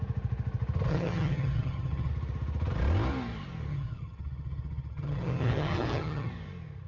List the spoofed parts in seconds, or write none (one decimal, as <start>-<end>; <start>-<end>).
0.9-2.1; 3.7-6.3